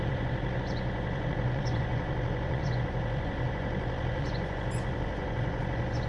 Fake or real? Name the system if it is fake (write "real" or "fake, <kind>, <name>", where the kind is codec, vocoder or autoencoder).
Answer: fake, vocoder, Vocos